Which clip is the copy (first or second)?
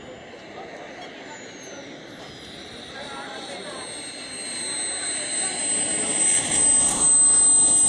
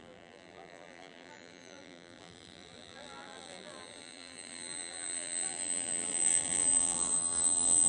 second